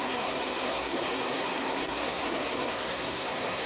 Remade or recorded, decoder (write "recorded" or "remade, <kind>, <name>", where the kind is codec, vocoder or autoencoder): remade, codec, SNAC